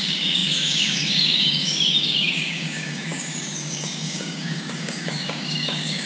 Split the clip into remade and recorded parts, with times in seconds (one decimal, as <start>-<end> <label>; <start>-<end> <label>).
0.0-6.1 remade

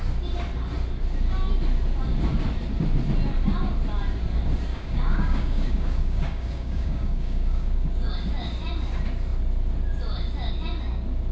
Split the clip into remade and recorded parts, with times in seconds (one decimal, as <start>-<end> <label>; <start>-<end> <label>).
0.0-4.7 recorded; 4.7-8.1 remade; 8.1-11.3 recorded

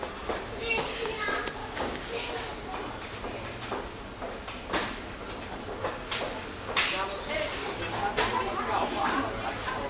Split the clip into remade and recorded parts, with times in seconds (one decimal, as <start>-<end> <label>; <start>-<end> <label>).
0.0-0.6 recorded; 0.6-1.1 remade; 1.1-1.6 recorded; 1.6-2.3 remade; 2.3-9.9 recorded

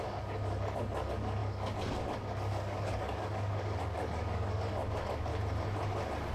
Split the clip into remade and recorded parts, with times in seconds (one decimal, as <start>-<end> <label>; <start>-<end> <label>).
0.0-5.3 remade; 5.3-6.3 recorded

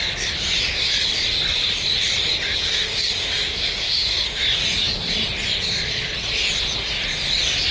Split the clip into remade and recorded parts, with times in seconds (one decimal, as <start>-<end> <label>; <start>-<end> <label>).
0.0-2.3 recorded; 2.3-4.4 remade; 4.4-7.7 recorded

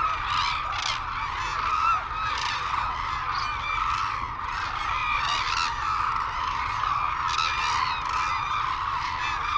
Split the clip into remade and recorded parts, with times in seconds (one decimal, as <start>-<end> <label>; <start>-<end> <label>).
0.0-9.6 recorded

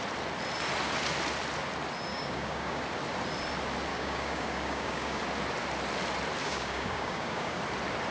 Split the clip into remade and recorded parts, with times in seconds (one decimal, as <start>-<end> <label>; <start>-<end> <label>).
0.0-2.1 recorded; 2.1-2.8 remade; 2.8-3.9 recorded; 3.9-5.2 remade; 5.2-6.4 recorded; 6.4-7.6 remade; 7.6-8.1 recorded